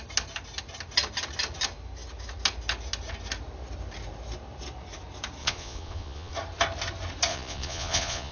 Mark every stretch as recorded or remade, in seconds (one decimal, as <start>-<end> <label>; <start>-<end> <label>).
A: 0.0-5.4 recorded; 5.4-6.3 remade; 6.3-7.3 recorded; 7.3-8.3 remade